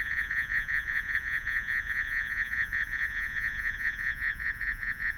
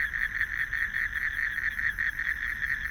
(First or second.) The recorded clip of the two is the second